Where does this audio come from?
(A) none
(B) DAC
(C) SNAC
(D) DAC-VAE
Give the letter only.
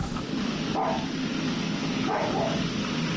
A